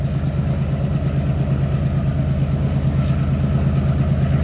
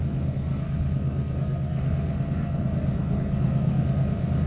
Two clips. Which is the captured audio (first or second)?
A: first